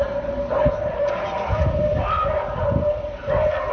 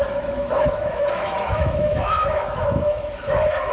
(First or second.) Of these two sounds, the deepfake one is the second